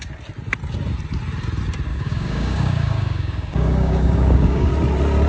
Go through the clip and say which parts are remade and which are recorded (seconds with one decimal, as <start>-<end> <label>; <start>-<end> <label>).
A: 0.0-1.9 recorded; 1.9-4.7 remade; 4.7-5.3 recorded